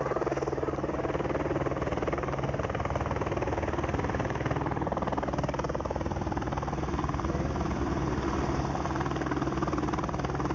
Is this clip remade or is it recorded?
recorded